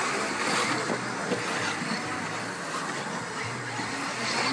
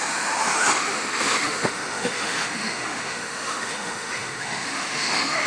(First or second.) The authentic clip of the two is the first